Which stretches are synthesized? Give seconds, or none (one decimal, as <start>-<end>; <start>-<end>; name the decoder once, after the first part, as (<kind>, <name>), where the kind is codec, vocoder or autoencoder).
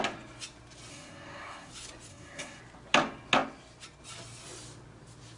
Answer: 0.9-1.7 (codec, SNAC); 2.1-2.6